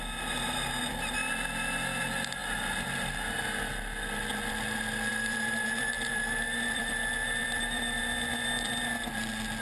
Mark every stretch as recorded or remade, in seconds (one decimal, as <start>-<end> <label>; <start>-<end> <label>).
0.0-5.1 recorded; 5.1-6.9 remade; 6.9-7.4 recorded; 7.4-8.0 remade; 8.0-9.6 recorded